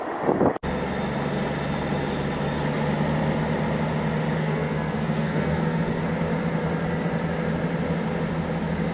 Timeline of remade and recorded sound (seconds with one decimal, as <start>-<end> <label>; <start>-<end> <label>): 0.0-4.4 recorded; 4.4-6.0 remade; 6.0-8.9 recorded